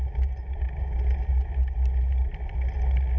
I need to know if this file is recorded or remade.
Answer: recorded